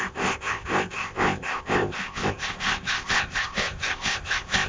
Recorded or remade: remade